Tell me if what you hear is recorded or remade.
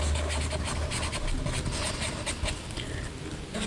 remade